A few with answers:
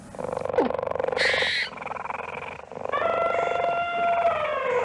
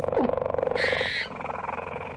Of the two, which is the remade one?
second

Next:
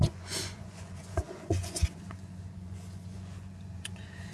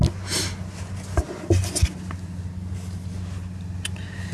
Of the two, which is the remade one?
first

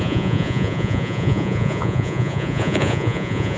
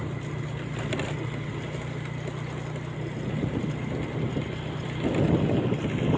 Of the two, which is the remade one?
first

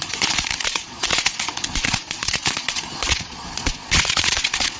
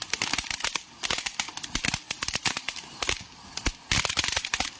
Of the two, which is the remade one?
first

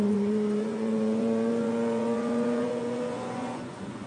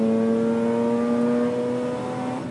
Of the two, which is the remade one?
first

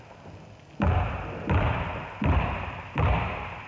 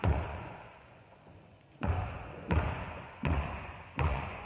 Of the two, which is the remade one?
second